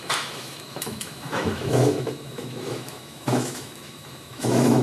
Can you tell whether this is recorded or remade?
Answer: remade